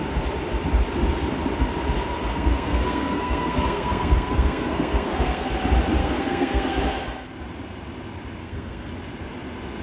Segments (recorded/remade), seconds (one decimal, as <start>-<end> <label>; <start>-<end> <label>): 0.0-2.3 recorded; 2.3-5.5 remade; 5.5-6.0 recorded; 6.0-6.8 remade; 6.8-8.4 recorded; 8.4-8.9 remade; 8.9-9.8 recorded